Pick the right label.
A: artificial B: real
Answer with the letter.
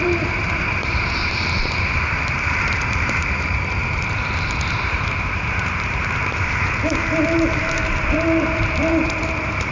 A